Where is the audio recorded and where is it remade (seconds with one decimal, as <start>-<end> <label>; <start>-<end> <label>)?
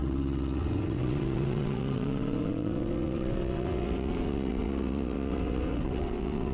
0.0-6.5 remade